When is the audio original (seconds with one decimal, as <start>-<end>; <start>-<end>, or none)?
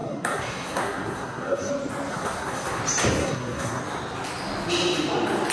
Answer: 1.7-2.1; 2.8-3.2; 3.8-5.5